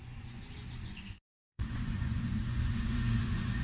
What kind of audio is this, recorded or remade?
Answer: remade